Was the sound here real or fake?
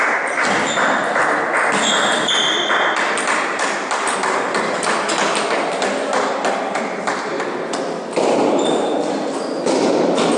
real